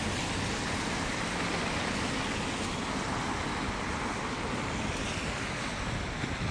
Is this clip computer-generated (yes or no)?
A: no